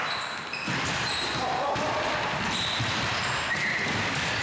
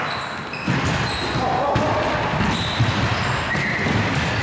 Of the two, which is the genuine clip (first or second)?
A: second